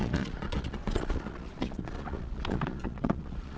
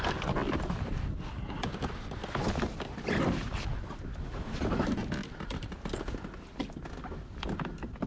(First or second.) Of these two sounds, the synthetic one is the first